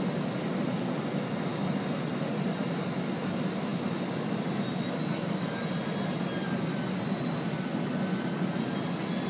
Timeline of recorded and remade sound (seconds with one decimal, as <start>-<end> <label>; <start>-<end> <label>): 0.0-9.3 recorded